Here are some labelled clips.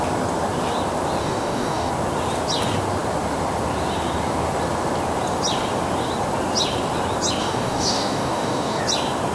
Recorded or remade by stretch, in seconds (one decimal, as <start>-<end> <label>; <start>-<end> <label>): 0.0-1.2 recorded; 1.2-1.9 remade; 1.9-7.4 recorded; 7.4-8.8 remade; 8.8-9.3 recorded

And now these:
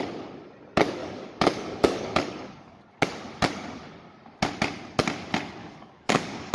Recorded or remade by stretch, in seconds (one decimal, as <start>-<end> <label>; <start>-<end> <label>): 0.0-1.0 recorded; 1.0-2.8 remade; 2.8-5.6 recorded; 5.6-6.5 remade

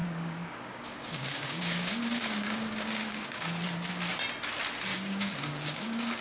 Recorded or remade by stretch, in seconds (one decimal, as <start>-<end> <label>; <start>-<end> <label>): 0.0-3.5 remade; 3.5-4.9 recorded; 4.9-6.2 remade